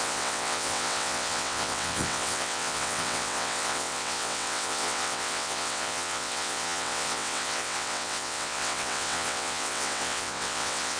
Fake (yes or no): yes